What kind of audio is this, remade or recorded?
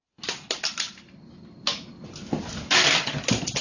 recorded